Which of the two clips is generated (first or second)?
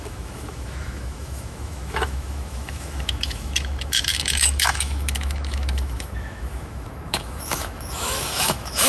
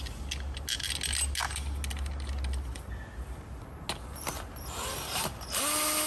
first